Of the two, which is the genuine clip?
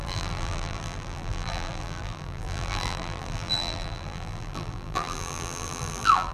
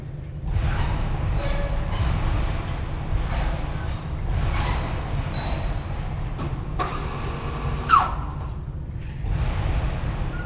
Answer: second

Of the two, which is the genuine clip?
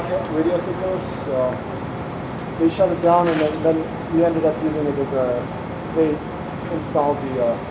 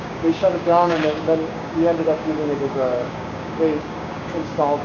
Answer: first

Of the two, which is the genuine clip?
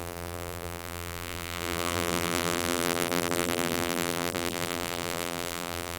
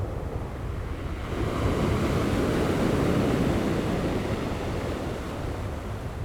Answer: second